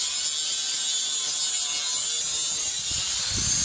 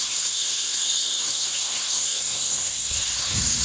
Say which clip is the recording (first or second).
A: first